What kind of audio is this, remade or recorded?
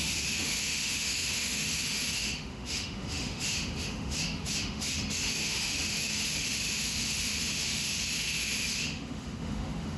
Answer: remade